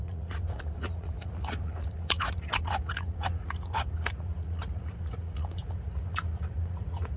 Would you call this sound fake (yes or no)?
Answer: yes